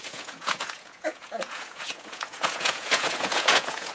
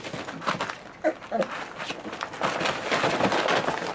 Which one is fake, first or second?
first